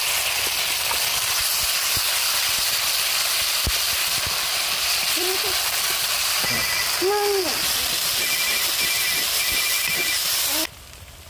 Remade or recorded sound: recorded